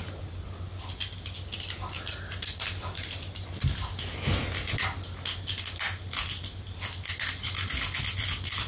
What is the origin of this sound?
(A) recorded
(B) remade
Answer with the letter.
A